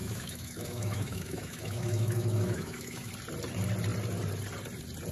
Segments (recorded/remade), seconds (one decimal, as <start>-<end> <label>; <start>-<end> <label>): 0.0-3.1 remade; 3.1-5.1 recorded